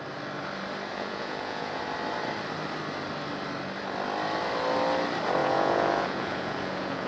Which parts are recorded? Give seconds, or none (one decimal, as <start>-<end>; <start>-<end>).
0.0-0.9; 1.8-5.4

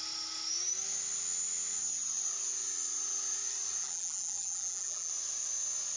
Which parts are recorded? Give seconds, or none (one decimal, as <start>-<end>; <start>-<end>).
0.0-3.8; 5.1-6.0

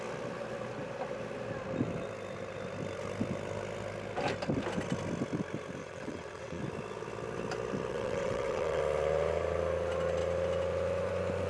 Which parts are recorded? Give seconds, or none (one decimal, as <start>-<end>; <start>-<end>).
0.0-5.8; 6.6-7.9; 8.8-11.5

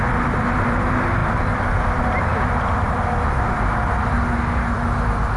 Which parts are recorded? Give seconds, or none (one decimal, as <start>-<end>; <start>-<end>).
0.0-5.4

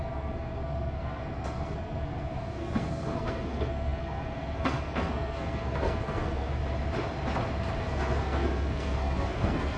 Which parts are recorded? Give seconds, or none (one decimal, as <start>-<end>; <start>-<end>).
6.6-7.8

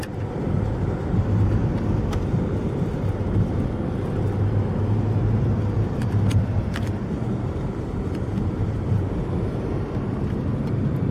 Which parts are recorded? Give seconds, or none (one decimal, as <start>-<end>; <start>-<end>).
1.6-5.7

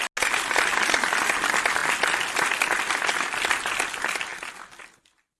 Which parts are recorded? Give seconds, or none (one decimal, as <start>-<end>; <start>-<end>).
0.0-5.4

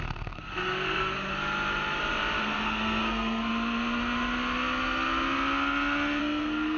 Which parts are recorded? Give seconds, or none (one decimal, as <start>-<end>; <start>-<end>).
1.3-2.4; 3.5-6.2